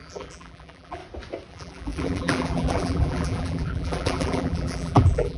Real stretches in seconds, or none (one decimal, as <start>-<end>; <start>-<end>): 1.0-1.5